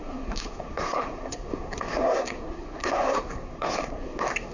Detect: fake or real fake